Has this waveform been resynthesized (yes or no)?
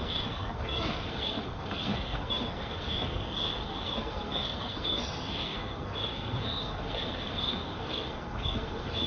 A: yes